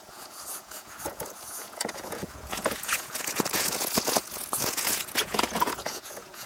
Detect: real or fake fake